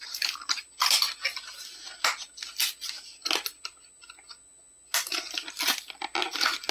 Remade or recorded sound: recorded